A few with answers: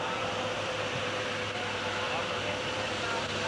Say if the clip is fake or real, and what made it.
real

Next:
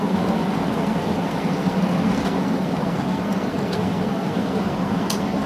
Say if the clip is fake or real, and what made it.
fake, codec, SNAC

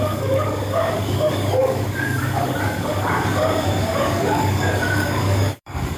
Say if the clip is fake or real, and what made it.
fake, codec, DAC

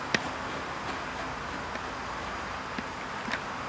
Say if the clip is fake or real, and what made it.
real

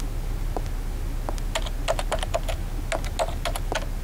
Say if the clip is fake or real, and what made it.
real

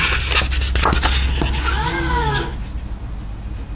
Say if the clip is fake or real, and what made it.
real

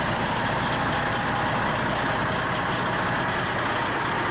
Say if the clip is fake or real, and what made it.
real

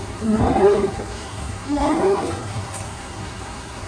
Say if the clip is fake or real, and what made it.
fake, codec, SNAC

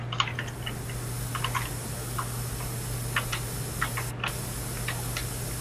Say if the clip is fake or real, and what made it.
real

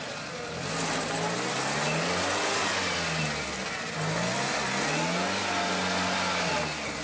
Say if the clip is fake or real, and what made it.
real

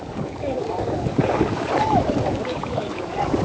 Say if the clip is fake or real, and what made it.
fake, codec, DAC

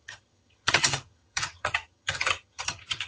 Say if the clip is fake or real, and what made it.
fake, vocoder, HiFi-GAN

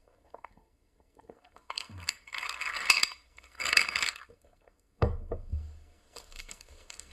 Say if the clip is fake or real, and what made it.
fake, codec, SNAC